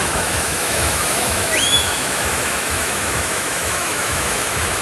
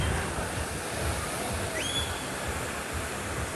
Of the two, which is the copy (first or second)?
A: first